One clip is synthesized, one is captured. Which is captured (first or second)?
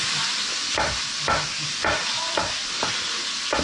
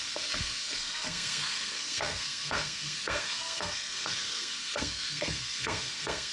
first